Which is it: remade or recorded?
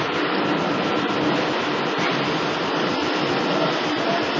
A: recorded